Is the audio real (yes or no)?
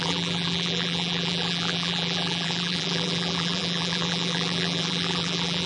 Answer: no